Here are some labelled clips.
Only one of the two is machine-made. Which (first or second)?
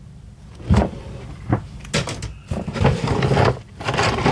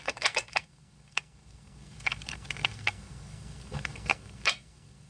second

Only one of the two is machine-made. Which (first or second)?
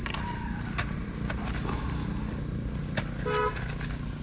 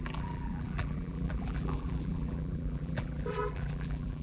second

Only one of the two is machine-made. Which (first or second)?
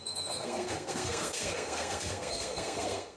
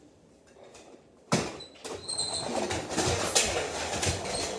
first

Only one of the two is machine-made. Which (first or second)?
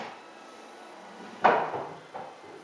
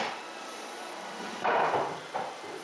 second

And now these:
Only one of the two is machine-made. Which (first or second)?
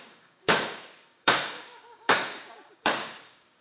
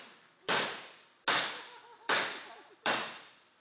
first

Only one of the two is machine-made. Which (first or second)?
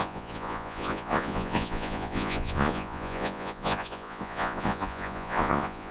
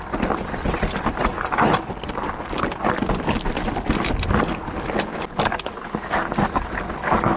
first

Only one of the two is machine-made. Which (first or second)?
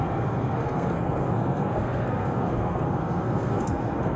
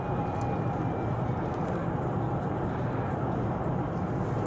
first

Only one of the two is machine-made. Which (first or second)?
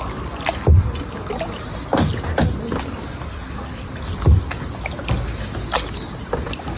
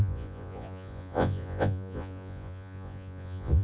second